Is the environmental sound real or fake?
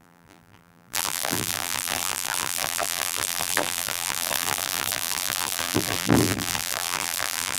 fake